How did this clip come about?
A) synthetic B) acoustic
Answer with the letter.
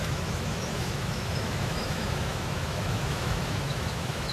A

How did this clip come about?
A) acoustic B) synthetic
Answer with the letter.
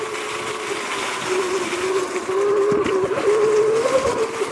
A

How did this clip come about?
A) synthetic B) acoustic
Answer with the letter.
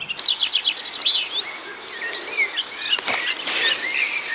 B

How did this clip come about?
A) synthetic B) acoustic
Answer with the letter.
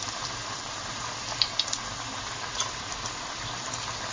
B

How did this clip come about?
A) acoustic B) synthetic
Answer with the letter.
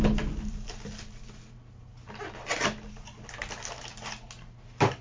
A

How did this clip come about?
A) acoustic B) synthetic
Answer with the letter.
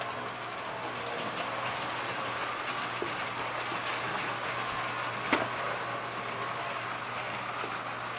A